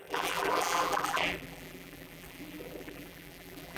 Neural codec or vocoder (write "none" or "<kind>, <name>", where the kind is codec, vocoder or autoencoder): vocoder, BigVGAN v2